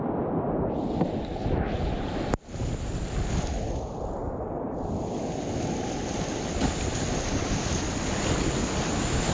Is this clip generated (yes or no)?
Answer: no